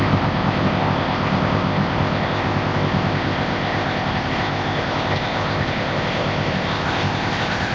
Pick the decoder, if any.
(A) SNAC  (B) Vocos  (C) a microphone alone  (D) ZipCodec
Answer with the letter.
D